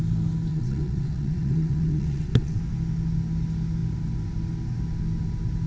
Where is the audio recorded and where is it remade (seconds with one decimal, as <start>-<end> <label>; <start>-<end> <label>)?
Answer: 0.0-0.5 recorded; 0.5-2.6 remade; 2.6-5.7 recorded